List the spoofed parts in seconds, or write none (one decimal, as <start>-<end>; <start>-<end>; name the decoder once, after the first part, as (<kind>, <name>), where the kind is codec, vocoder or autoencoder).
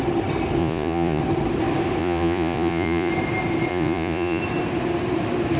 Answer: 0.6-1.2 (vocoder, Vocos); 2.0-3.1; 3.7-4.4